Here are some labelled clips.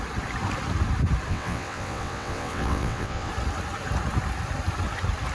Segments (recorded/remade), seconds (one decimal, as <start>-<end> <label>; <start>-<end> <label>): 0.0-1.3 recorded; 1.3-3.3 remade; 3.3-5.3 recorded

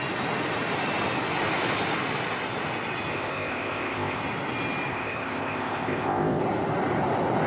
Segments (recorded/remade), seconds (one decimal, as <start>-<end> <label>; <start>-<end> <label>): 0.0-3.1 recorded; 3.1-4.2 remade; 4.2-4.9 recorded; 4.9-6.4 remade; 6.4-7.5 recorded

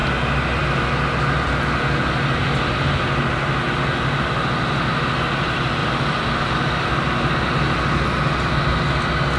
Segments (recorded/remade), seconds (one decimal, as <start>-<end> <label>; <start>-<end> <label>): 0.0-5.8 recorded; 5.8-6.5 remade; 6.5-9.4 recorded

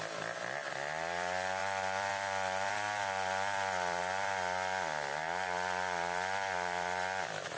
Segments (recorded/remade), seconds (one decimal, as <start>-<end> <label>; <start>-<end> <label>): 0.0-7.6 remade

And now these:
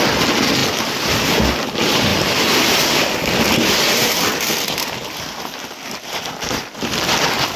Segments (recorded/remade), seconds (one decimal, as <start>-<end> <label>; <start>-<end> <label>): 0.0-7.6 recorded

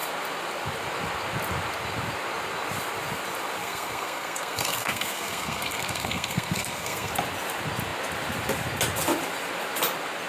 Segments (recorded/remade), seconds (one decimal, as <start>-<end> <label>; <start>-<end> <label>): 0.0-3.6 recorded; 3.6-7.1 remade; 7.1-10.3 recorded

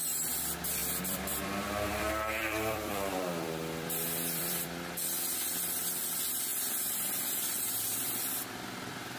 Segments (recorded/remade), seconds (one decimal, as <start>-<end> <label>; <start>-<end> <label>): 0.0-0.8 recorded; 0.8-5.6 remade; 5.6-6.5 recorded; 6.5-8.3 remade; 8.3-9.2 recorded